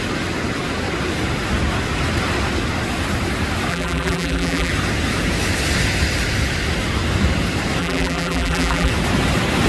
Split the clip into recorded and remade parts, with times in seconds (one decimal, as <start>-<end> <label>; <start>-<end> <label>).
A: 0.0-3.7 recorded; 3.7-4.7 remade; 4.7-7.8 recorded; 7.8-8.9 remade; 8.9-9.7 recorded